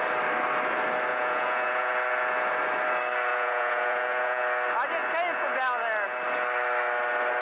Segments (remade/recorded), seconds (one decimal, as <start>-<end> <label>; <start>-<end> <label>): 0.0-1.1 recorded; 1.1-1.9 remade; 1.9-3.3 recorded; 3.3-4.4 remade; 4.4-7.4 recorded

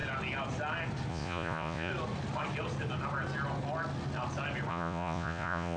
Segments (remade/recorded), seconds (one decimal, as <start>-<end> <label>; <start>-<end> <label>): 0.0-1.1 recorded; 1.1-1.9 remade; 1.9-4.7 recorded; 4.7-5.8 remade

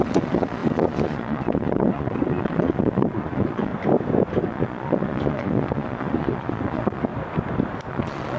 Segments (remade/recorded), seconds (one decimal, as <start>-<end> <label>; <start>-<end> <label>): 0.0-3.7 remade; 3.7-4.4 recorded; 4.4-7.1 remade; 7.1-7.9 recorded; 7.9-8.4 remade

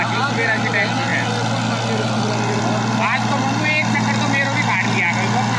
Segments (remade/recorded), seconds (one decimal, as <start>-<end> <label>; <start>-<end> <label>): 0.0-5.6 recorded

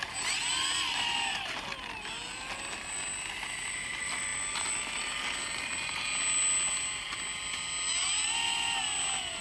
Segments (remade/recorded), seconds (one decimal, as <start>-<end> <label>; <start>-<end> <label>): 0.0-9.4 recorded

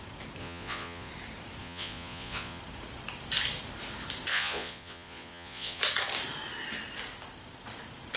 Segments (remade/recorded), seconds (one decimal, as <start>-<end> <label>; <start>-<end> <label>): 0.0-0.4 recorded; 0.4-1.1 remade; 1.1-1.6 recorded; 1.6-2.6 remade; 2.6-4.3 recorded; 4.3-5.8 remade; 5.8-8.2 recorded